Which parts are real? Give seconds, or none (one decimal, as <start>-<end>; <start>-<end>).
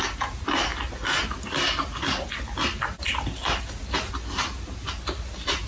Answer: 0.0-5.7